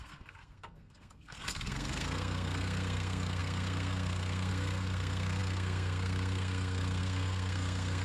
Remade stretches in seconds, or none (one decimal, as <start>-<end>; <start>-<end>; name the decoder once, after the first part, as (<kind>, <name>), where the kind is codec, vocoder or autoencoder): 0.0-8.0 (codec, SNAC)